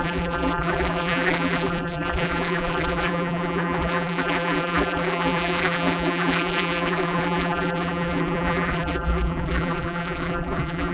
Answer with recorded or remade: remade